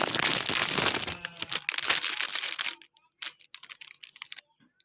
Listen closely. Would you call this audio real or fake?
real